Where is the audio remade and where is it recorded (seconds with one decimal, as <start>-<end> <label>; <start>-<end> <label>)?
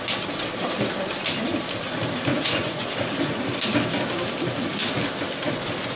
0.0-2.3 recorded; 2.3-2.9 remade; 2.9-6.0 recorded